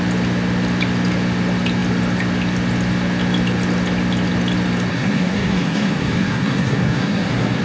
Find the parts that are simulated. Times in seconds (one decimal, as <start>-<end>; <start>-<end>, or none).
4.9-7.6